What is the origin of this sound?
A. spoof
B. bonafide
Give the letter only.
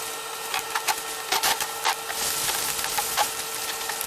B